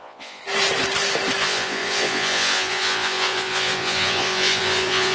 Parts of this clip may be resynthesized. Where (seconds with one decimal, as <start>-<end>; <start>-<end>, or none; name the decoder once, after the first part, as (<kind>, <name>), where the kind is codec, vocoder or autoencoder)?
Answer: 0.0-0.4 (vocoder, Vocos); 1.4-5.1